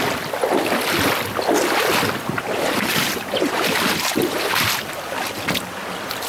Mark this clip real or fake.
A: real